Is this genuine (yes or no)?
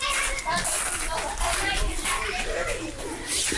yes